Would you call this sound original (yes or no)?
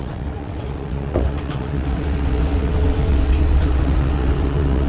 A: no